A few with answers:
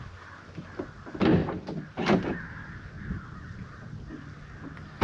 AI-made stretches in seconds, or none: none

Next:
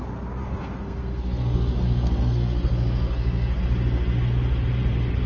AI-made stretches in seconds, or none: 0.4-3.6 (codec, SNAC)

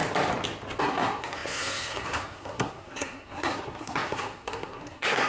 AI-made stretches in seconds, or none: 0.8-5.3 (codec, SNAC)

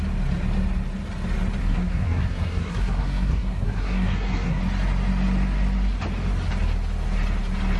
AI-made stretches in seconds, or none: 1.6-4.6 (codec, SNAC)

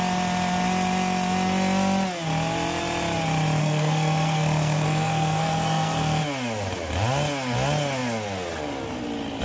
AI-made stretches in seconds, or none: 3.6-6.2 (codec, SNAC)